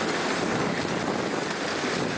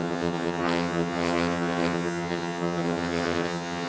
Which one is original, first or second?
first